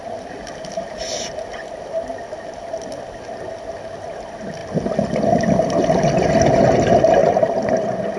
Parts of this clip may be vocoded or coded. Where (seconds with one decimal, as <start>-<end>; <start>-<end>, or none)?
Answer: none